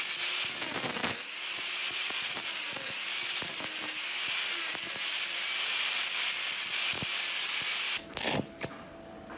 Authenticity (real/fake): real